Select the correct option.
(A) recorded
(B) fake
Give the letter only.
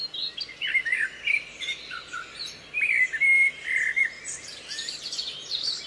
B